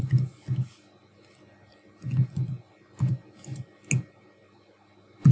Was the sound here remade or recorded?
recorded